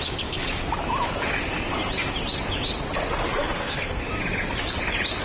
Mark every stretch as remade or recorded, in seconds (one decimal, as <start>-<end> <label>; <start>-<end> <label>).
0.0-3.4 recorded; 3.4-4.0 remade; 4.0-5.2 recorded